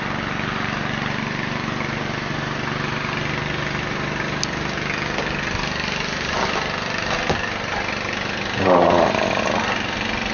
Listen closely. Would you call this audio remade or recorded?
recorded